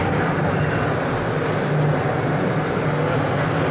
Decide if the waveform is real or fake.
real